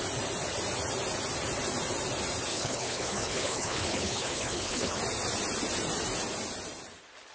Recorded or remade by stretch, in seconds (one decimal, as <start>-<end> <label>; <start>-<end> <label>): 0.0-2.5 recorded; 2.5-5.0 remade; 5.0-7.3 recorded